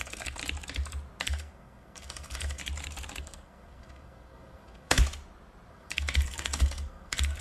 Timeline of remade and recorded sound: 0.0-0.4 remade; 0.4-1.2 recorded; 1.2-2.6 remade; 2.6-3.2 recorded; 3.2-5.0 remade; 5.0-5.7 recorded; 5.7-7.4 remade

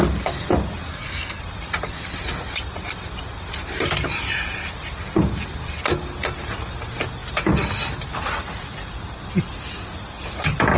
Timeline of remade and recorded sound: 0.0-0.9 recorded; 0.9-1.4 remade; 1.4-10.8 recorded

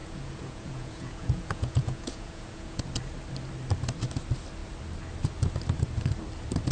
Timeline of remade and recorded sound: 0.0-2.8 remade; 2.8-6.7 recorded

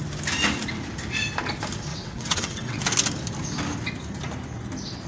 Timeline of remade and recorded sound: 0.0-1.9 recorded; 1.9-2.8 remade; 2.8-5.1 recorded

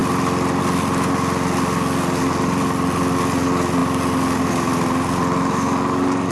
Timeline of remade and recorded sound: 0.0-6.3 recorded